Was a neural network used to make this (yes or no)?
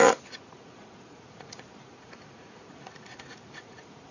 yes